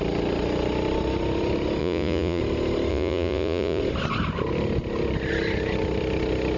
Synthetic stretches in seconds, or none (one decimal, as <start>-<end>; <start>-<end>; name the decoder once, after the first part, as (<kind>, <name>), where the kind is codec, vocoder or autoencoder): 1.8-2.4 (vocoder, Vocos); 2.9-3.8